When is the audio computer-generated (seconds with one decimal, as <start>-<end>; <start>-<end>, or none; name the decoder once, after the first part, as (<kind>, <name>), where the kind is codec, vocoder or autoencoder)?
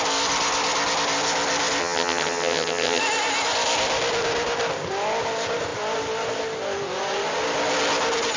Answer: 1.8-3.0 (vocoder, HiFi-GAN)